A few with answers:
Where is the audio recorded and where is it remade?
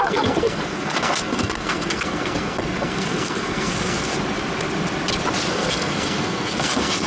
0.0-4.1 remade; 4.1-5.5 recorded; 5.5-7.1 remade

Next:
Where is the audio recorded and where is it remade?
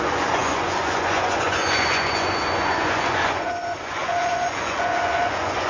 0.0-5.7 remade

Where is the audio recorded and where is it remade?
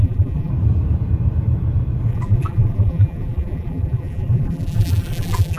0.0-0.5 remade; 0.5-2.1 recorded; 2.1-5.6 remade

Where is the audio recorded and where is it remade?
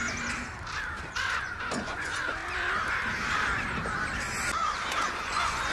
0.0-1.1 recorded; 1.1-2.4 remade; 2.4-5.0 recorded; 5.0-5.7 remade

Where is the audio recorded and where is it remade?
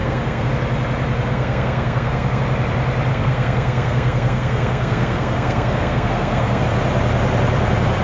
0.0-0.5 remade; 0.5-1.3 recorded; 1.3-2.4 remade; 2.4-3.1 recorded; 3.1-6.6 remade; 6.6-8.0 recorded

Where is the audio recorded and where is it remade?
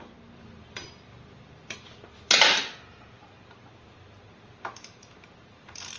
0.0-6.0 remade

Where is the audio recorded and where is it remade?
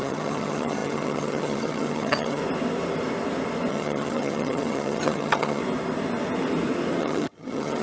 0.0-2.4 remade; 2.4-3.7 recorded; 3.7-5.6 remade; 5.6-7.0 recorded; 7.0-7.8 remade